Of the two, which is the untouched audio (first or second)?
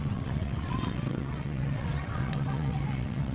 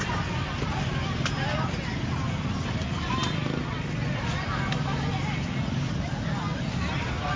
second